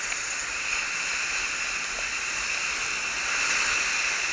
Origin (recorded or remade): recorded